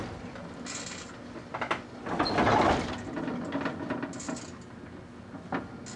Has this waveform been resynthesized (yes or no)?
no